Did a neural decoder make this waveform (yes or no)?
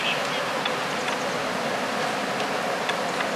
no